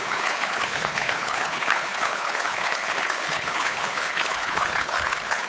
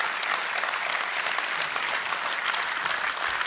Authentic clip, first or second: second